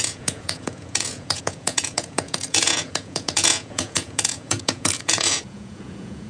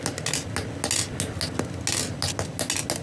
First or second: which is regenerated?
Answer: first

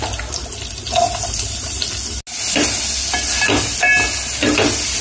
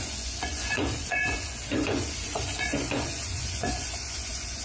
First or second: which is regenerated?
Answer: second